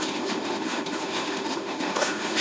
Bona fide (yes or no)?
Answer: no